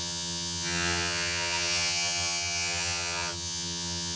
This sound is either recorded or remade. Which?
remade